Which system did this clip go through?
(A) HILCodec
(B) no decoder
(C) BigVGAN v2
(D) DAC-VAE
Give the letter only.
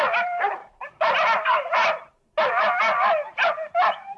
B